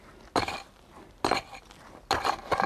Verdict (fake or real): real